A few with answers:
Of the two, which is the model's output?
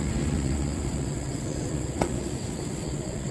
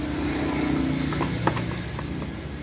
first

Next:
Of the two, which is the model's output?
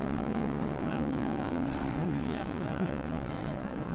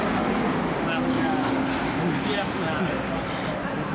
first